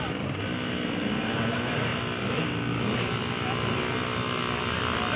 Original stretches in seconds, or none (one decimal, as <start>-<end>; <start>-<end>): 0.0-5.2